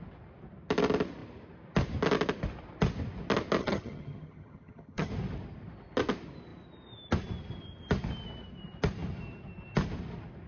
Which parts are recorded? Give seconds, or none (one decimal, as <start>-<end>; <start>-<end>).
0.0-3.6; 5.1-10.5